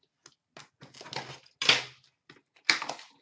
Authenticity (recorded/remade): recorded